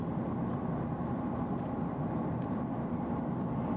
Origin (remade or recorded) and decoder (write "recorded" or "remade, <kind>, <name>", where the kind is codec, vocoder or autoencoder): recorded